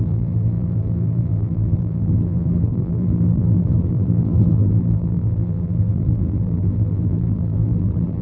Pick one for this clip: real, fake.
fake